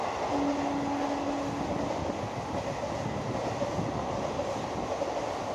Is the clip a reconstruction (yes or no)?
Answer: no